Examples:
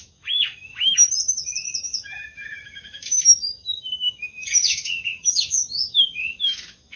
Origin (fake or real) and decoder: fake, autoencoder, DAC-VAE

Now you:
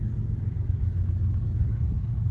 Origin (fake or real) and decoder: fake, autoencoder, DAC-VAE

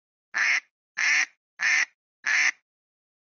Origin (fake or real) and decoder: real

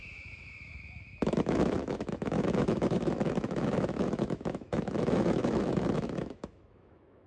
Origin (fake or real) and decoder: fake, autoencoder, DAC-VAE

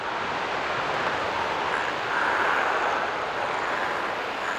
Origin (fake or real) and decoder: real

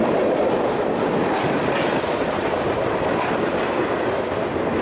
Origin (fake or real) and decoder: real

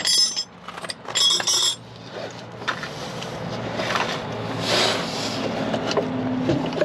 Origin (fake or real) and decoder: real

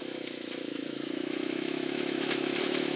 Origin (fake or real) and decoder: fake, autoencoder, DAC-VAE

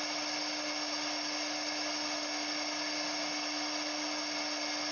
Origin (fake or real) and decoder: real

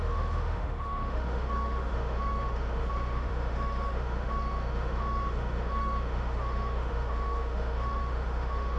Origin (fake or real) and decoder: fake, autoencoder, DAC-VAE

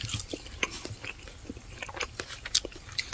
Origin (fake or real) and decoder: real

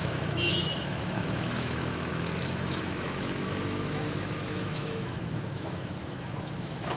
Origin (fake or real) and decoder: fake, autoencoder, DAC-VAE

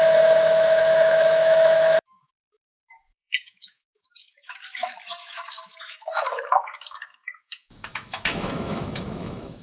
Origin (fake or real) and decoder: fake, autoencoder, DAC-VAE